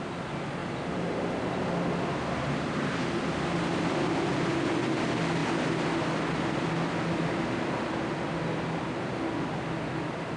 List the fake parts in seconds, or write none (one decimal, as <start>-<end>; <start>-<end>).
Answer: none

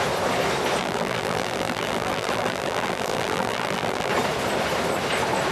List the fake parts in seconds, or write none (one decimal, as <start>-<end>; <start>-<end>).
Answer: 0.8-4.1